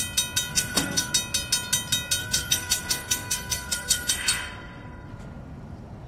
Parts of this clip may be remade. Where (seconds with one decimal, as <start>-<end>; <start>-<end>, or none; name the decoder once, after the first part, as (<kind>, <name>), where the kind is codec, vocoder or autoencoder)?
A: 0.5-1.1 (codec, SNAC); 2.2-5.1